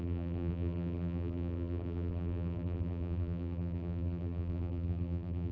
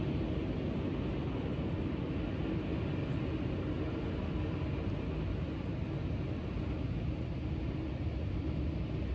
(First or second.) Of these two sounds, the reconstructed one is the first